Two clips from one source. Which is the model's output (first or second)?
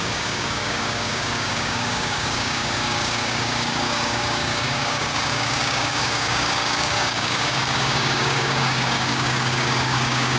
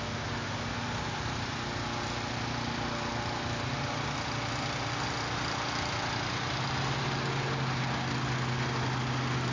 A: first